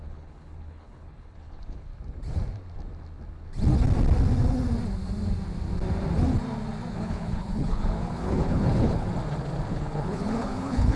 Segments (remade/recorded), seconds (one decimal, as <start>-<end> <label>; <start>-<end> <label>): 0.0-1.9 remade; 1.9-6.9 recorded; 6.9-9.1 remade; 9.1-9.7 recorded; 9.7-11.0 remade